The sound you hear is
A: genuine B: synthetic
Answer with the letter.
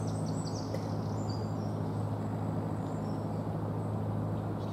A